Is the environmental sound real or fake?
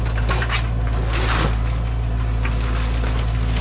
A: real